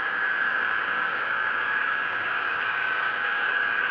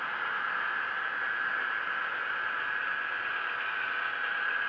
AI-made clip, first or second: first